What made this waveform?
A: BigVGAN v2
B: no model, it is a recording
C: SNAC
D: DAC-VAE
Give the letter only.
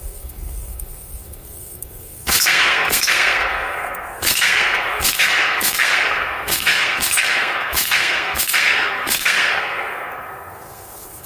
C